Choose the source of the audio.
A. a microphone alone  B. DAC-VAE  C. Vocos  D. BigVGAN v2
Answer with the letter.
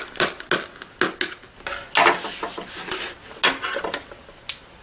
A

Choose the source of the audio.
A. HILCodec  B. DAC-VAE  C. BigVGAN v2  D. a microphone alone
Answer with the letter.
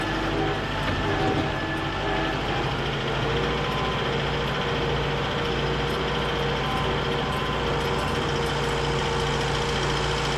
D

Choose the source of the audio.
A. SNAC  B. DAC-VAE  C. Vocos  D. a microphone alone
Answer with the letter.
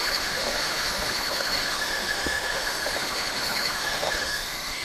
B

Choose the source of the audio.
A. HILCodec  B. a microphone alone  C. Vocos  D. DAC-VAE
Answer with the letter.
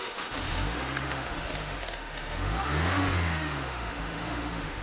D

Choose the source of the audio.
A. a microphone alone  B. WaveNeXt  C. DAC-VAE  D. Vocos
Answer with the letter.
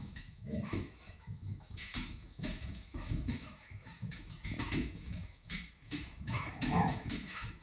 C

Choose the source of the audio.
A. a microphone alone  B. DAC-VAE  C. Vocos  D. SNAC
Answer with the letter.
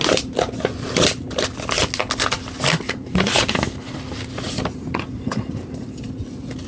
A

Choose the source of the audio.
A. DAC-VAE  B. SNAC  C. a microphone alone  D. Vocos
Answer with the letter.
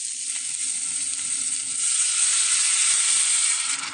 C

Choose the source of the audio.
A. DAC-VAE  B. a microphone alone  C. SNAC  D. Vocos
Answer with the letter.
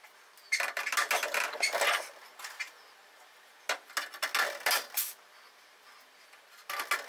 B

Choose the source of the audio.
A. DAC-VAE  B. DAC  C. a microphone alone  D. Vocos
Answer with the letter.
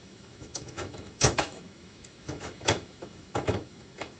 A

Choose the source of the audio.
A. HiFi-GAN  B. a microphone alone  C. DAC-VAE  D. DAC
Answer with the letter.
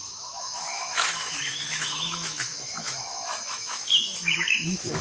C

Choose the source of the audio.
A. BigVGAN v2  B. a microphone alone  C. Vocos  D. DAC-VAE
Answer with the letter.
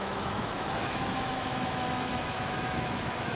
D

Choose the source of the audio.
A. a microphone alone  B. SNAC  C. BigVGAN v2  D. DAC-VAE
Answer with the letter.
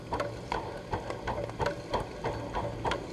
A